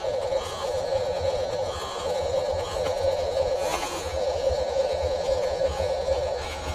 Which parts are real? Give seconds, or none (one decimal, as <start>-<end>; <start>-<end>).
none